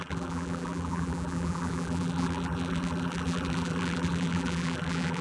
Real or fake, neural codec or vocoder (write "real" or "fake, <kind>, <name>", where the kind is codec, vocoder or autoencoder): fake, vocoder, BigVGAN v2